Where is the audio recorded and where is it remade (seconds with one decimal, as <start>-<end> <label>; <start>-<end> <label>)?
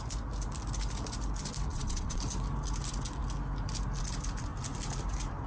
0.0-1.7 recorded; 1.7-2.2 remade; 2.2-5.5 recorded